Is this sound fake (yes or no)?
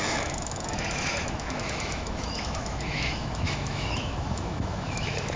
yes